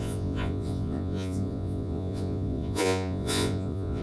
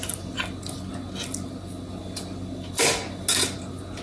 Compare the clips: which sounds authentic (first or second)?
second